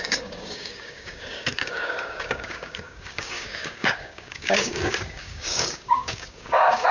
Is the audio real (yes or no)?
no